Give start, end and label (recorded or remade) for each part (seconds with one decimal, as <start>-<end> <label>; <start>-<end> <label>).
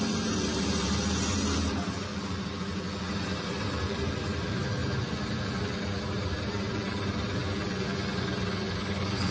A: 0.0-4.8 remade; 4.8-5.8 recorded; 5.8-7.4 remade; 7.4-8.7 recorded; 8.7-9.3 remade